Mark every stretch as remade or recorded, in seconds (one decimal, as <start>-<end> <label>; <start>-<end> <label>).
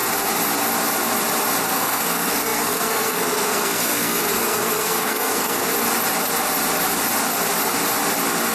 0.0-1.7 recorded; 1.7-5.7 remade; 5.7-8.5 recorded